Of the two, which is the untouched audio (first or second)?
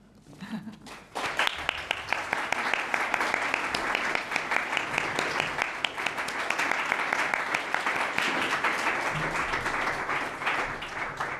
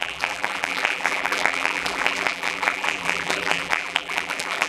first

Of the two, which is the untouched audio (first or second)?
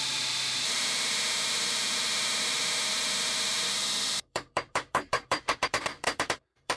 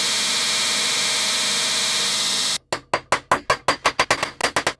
second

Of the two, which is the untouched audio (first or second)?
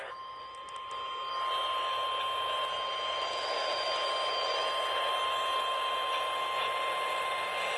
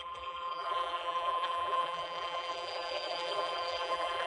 first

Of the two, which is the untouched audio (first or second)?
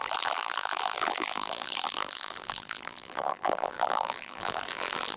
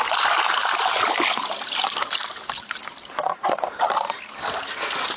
second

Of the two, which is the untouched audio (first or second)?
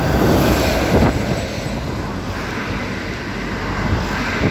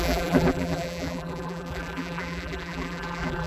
first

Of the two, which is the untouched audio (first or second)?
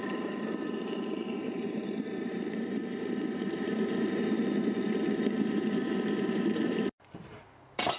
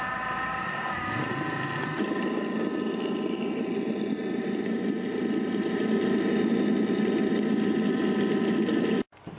second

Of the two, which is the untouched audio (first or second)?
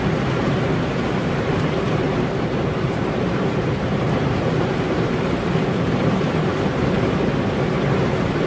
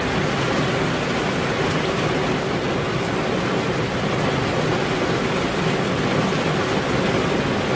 second